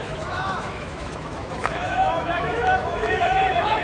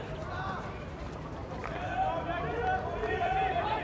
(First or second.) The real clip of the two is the second